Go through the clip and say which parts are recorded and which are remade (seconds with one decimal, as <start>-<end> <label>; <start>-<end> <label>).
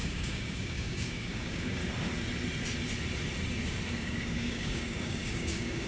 0.0-1.8 remade; 1.8-3.9 recorded; 3.9-5.9 remade